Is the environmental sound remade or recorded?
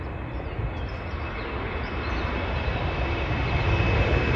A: recorded